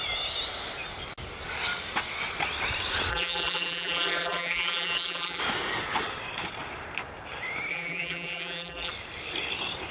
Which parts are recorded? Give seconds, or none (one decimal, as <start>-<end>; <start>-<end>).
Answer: 0.0-3.1; 5.4-7.7; 8.9-9.9

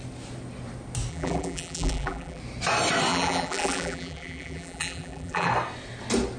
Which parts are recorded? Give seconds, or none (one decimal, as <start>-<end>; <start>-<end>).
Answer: 0.0-1.1; 2.4-3.1; 5.5-6.4

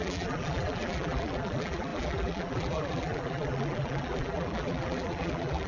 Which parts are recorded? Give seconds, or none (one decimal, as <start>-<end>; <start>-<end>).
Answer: none

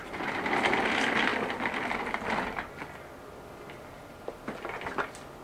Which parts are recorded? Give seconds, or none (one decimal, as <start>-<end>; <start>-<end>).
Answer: 0.0-5.4

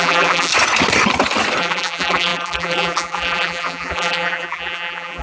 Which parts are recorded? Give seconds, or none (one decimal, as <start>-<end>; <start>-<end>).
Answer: 0.5-1.6

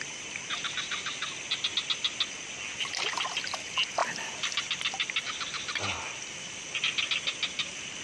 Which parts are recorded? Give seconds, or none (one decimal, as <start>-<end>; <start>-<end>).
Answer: 0.0-0.6; 1.9-4.0; 7.1-8.0